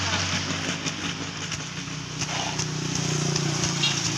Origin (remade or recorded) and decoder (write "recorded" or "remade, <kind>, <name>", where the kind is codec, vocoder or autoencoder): recorded